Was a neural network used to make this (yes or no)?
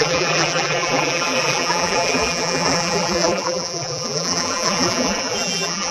yes